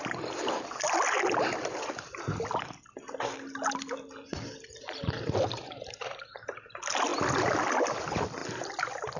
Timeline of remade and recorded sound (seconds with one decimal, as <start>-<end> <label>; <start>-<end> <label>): 0.0-8.4 recorded; 8.4-9.2 remade